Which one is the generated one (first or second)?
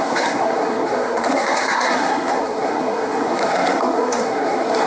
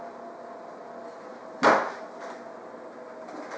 first